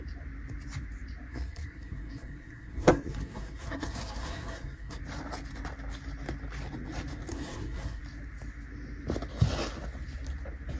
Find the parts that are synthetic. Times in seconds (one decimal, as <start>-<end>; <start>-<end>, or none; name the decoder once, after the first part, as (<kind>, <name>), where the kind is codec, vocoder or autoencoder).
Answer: 1.3-5.0 (codec, SNAC); 7.3-8.0